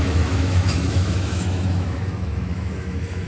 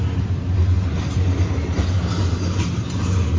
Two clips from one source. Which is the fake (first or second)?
first